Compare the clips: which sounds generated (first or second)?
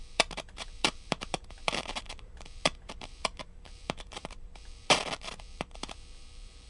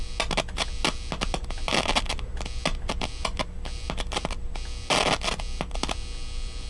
first